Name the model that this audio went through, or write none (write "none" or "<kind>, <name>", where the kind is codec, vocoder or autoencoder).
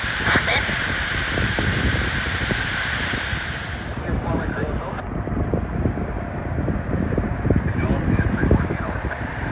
vocoder, BigVGAN v2